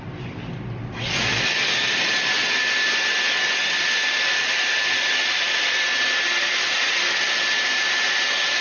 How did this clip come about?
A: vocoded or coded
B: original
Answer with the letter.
B